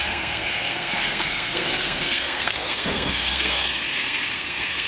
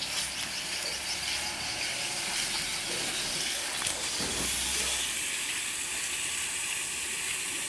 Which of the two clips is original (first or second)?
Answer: second